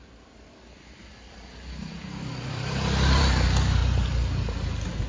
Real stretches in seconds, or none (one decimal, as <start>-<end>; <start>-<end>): 0.0-1.0; 3.3-5.1